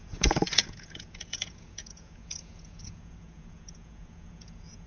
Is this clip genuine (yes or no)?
no